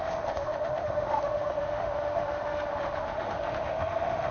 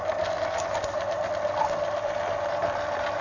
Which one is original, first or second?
second